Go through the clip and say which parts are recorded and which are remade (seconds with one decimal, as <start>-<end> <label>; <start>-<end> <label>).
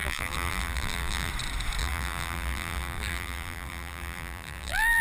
0.0-1.3 remade; 1.3-1.8 recorded; 1.8-5.0 remade